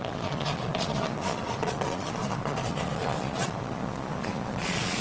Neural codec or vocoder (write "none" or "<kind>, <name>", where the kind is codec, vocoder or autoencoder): vocoder, Vocos